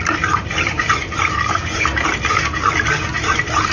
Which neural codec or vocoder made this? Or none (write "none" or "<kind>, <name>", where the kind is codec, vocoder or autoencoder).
none